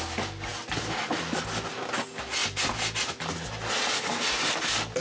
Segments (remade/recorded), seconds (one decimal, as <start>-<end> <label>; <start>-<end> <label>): 0.0-5.0 recorded